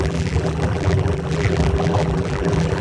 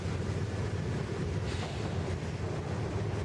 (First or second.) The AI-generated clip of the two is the first